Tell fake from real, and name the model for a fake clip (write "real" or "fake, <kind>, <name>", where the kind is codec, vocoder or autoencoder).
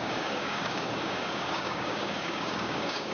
fake, codec, DAC